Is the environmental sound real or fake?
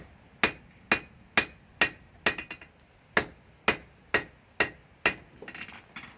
real